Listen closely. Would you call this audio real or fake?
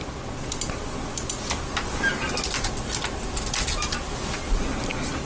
real